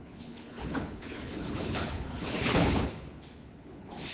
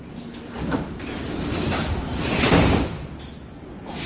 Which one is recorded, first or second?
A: second